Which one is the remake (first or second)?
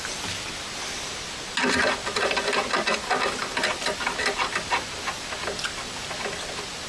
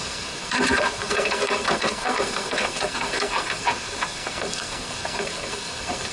second